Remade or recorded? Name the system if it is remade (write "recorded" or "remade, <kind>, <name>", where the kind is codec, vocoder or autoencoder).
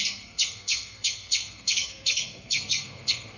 remade, codec, SNAC